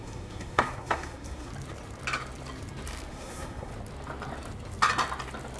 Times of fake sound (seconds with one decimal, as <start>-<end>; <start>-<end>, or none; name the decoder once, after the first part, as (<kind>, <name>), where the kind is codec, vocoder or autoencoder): 0.0-1.5 (codec, SNAC); 3.1-3.7